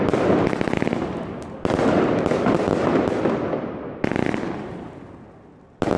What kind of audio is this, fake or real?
real